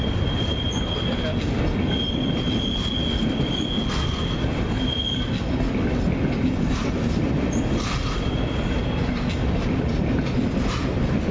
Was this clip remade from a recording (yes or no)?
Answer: no